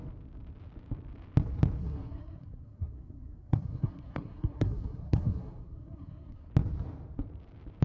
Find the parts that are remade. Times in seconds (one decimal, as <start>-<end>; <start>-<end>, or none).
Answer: 1.8-6.5